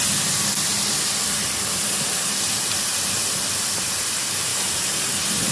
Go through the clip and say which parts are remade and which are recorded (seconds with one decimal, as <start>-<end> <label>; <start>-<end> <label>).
0.0-0.7 recorded; 0.7-2.9 remade; 2.9-4.5 recorded; 4.5-5.5 remade